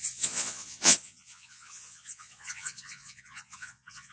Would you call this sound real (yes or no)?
no